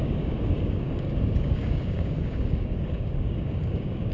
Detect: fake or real fake